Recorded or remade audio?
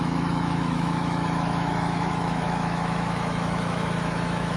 remade